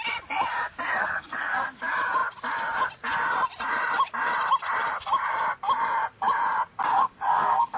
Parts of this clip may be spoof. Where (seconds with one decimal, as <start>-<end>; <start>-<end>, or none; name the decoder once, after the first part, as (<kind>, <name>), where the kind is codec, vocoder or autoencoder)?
1.0-1.8 (codec, SNAC); 7.0-7.8